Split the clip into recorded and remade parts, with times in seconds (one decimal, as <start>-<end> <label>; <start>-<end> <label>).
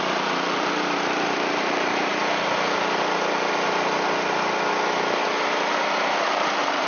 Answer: 0.0-2.1 remade; 2.1-6.2 recorded; 6.2-6.9 remade